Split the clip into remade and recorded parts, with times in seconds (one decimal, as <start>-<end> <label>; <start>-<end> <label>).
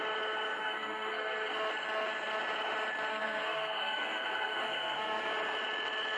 0.0-0.6 recorded; 0.6-1.5 remade; 1.5-3.1 recorded; 3.1-5.3 remade; 5.3-6.2 recorded